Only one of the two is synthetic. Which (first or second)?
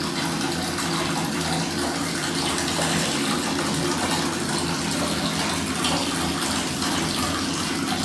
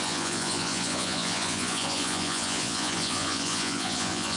second